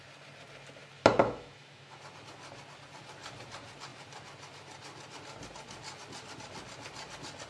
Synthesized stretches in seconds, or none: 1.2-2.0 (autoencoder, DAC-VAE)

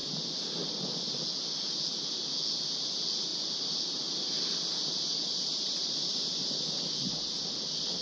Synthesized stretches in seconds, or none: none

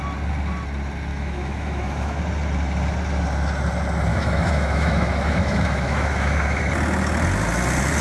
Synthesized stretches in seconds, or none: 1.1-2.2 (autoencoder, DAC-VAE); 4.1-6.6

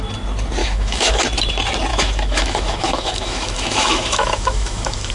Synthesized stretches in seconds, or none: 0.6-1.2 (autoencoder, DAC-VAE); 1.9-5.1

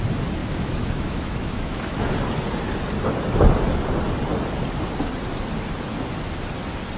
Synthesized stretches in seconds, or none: 0.4-2.1 (autoencoder, DAC-VAE)